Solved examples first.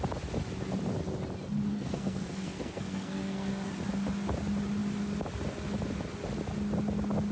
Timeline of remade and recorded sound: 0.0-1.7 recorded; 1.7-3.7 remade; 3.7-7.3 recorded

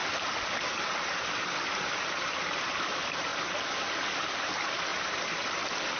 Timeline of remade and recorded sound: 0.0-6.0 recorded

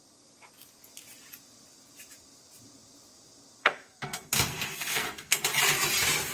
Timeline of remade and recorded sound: 0.0-3.6 recorded; 3.6-5.4 remade; 5.4-6.3 recorded